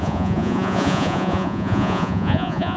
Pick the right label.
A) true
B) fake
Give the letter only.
B